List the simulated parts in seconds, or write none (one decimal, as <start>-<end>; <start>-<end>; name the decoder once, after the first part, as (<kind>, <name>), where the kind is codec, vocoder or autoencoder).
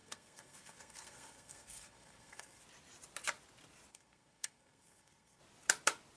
0.0-2.6 (codec, SNAC); 3.9-5.4